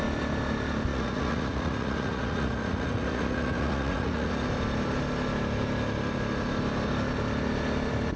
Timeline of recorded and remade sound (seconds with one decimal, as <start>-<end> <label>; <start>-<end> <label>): 0.0-0.9 recorded; 0.9-4.3 remade; 4.3-8.2 recorded